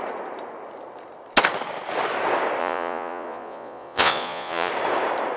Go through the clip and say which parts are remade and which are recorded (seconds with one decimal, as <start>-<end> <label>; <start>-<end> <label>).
0.0-2.6 recorded; 2.6-4.7 remade; 4.7-5.4 recorded